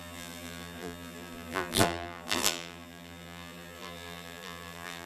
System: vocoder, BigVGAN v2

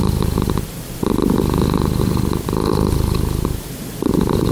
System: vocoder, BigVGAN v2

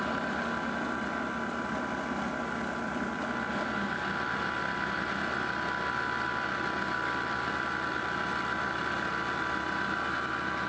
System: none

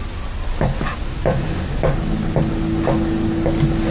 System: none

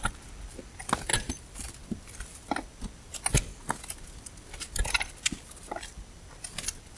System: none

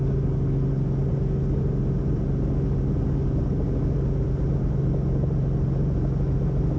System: none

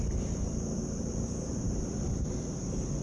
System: vocoder, BigVGAN v2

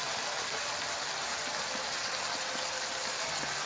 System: none